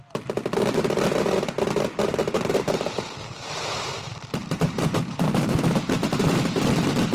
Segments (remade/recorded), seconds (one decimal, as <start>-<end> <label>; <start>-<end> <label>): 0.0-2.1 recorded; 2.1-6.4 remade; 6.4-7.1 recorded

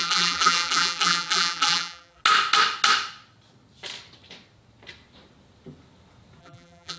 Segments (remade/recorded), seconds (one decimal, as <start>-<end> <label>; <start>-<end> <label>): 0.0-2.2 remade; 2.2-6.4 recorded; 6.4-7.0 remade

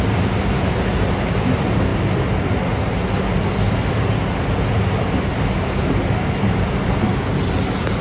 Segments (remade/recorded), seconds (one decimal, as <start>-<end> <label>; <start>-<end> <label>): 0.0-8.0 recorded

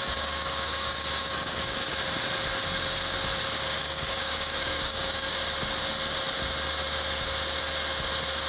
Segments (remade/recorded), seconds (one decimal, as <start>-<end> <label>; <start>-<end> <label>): 0.0-1.9 remade; 1.9-3.8 recorded; 3.8-5.4 remade; 5.4-8.5 recorded